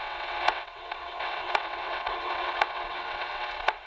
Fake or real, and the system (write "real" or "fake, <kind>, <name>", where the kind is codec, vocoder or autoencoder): fake, vocoder, WaveNeXt